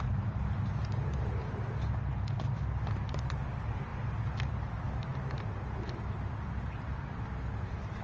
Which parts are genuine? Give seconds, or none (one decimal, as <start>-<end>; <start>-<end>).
1.4-3.1; 3.9-4.5; 5.1-7.6